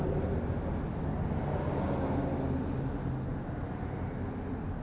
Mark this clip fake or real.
real